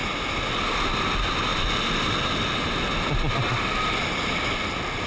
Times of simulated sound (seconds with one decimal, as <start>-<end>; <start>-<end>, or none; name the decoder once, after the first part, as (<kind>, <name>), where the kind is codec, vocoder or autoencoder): none